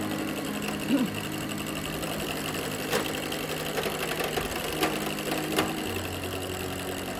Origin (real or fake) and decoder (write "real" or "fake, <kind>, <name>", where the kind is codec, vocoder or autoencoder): fake, vocoder, BigVGAN v2